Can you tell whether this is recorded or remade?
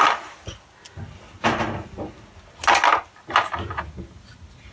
recorded